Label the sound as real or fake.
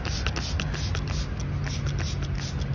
real